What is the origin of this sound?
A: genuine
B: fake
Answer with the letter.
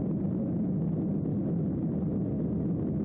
A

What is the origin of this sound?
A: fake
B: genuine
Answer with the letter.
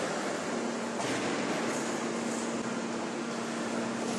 B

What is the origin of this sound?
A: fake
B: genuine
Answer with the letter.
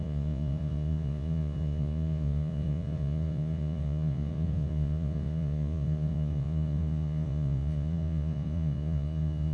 A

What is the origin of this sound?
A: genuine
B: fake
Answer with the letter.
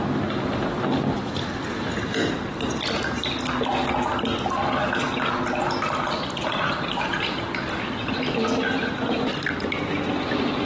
A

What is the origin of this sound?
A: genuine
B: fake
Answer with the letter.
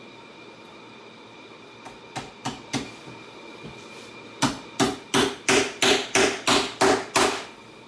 A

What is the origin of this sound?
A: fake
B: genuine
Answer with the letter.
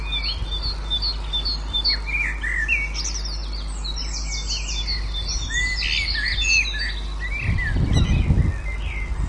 B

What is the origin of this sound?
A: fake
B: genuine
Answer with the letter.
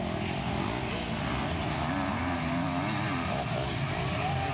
B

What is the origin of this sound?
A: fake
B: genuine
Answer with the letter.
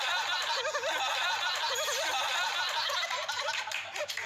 B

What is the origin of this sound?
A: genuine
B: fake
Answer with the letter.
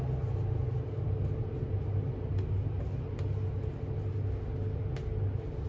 A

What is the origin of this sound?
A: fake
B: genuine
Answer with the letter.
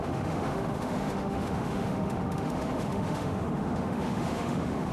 A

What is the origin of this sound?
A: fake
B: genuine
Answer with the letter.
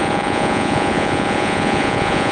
A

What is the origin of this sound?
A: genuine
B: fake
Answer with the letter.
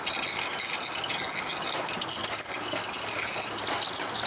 A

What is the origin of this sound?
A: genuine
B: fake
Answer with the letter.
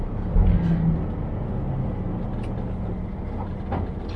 A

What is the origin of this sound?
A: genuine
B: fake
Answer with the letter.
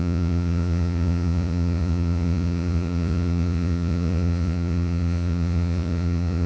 B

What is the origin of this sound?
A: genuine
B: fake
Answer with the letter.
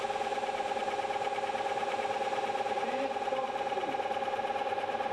B